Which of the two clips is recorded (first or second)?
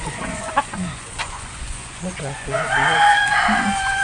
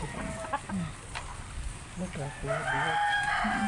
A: second